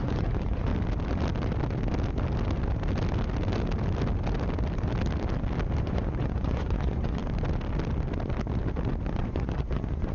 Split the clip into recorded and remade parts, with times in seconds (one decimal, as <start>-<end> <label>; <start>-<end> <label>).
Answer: 0.0-0.7 remade; 0.7-5.8 recorded; 5.8-7.2 remade; 7.2-9.1 recorded; 9.1-10.1 remade